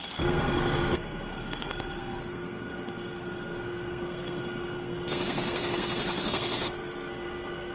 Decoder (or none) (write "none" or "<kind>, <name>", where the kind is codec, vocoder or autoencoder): codec, SNAC